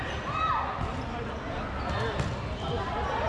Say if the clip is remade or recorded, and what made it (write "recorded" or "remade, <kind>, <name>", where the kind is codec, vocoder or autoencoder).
recorded